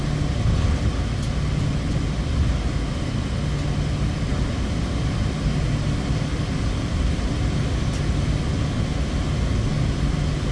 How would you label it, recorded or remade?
recorded